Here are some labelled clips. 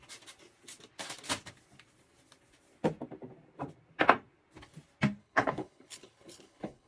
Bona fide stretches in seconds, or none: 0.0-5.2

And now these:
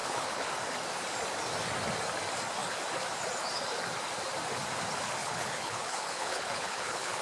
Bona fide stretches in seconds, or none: 0.5-5.2